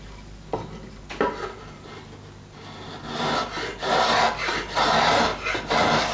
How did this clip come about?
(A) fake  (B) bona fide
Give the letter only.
B